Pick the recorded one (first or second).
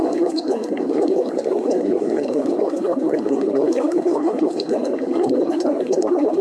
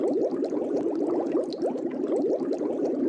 second